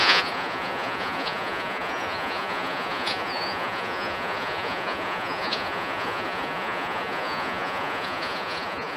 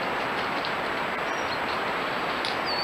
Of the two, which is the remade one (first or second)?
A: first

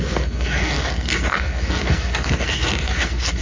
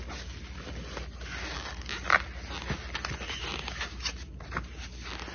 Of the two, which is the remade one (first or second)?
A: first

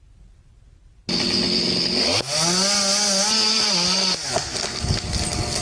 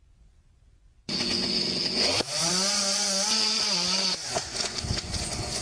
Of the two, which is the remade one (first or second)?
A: second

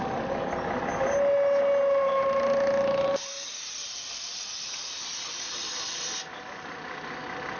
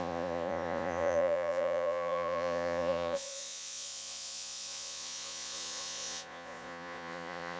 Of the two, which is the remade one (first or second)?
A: second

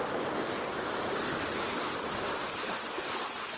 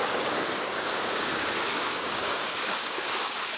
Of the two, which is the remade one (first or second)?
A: second